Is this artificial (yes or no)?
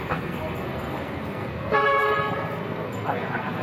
yes